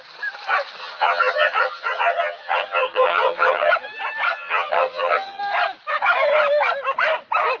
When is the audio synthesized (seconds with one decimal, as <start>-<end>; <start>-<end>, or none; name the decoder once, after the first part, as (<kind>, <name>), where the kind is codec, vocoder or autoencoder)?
0.8-3.7 (vocoder, HiFi-GAN); 4.3-5.4